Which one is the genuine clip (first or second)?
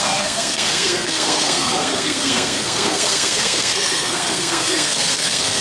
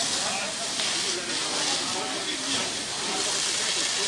second